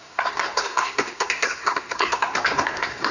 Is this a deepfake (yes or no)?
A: yes